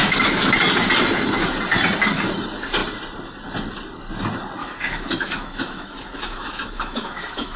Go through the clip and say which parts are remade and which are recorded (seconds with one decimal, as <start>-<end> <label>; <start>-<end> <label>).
0.0-0.5 remade; 0.5-4.6 recorded; 4.6-7.6 remade